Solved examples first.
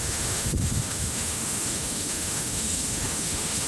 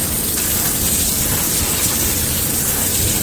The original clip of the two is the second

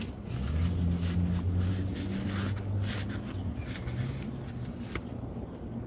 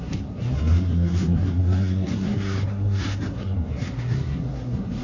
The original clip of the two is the first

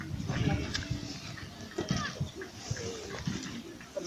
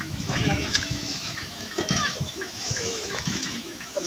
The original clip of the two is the first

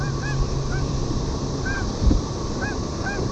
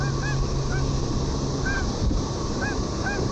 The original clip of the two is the second